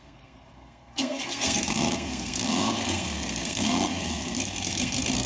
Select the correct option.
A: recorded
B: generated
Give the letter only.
B